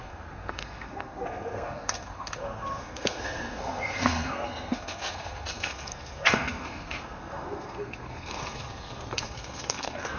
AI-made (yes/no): yes